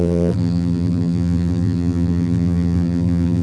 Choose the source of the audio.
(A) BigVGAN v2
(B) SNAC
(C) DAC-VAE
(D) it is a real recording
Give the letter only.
A